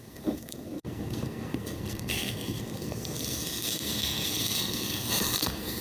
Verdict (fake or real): fake